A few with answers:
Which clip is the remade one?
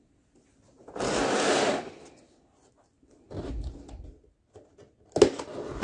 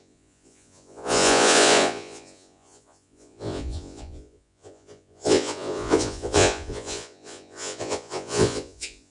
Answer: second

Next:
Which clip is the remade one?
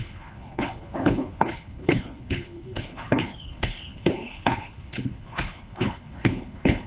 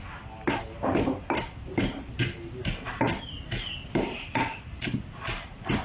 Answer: first